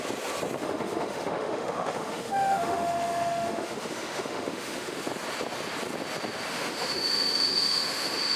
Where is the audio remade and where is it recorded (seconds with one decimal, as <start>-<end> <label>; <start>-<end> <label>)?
0.0-0.6 recorded; 0.6-5.0 remade; 5.0-6.5 recorded; 6.5-8.4 remade